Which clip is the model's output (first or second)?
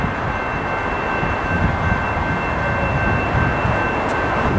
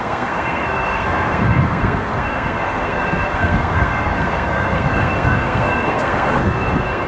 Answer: second